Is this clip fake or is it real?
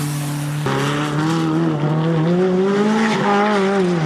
real